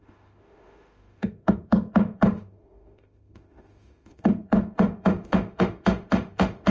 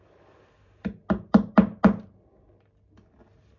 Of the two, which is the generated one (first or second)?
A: first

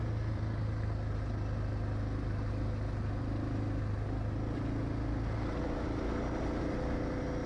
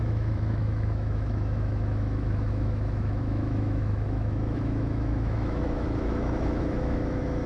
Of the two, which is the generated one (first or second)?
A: second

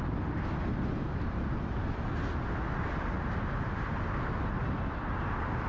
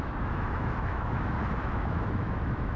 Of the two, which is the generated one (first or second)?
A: second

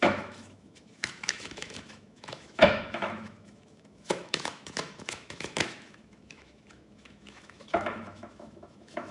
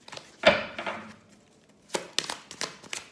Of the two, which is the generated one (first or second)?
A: first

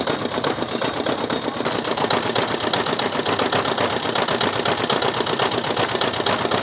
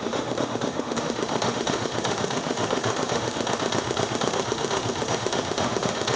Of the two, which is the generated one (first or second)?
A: second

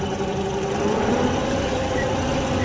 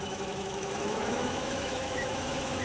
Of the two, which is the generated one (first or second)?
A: second